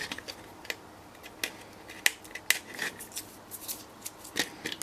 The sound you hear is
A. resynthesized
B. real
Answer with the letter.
B